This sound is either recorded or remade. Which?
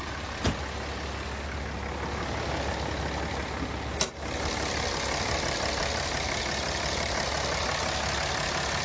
recorded